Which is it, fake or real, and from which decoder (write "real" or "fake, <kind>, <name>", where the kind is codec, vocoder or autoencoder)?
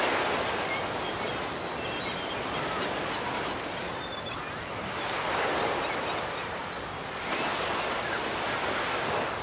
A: real